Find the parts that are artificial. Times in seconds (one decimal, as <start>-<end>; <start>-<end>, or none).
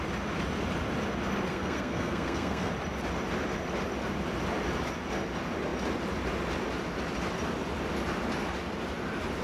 1.5-2.7